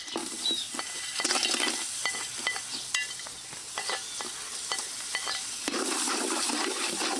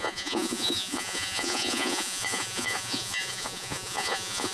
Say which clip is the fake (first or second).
second